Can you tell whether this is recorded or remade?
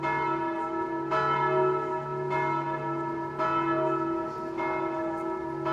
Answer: recorded